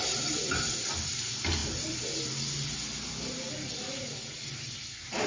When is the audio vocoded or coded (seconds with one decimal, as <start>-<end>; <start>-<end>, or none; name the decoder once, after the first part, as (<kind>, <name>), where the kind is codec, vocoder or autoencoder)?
0.4-1.1 (vocoder, BigVGAN v2)